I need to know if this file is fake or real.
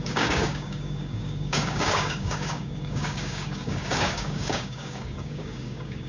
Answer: fake